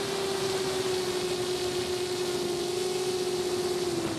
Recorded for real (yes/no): yes